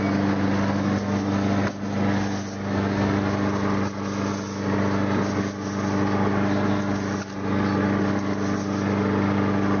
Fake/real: real